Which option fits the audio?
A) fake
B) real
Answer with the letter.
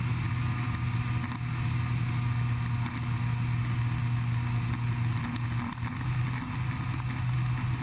B